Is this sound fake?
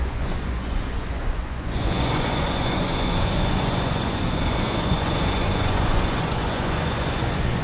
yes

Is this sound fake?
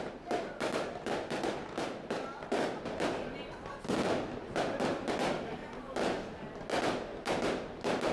no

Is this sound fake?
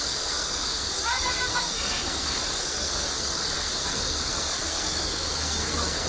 yes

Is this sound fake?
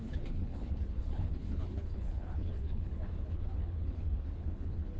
yes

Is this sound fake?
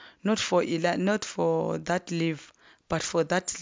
no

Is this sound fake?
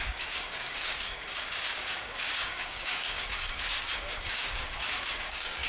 yes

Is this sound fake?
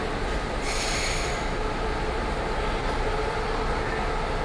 no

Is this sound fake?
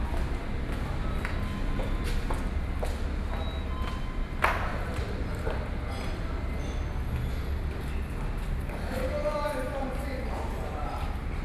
no